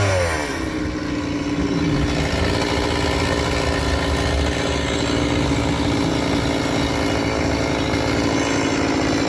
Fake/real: real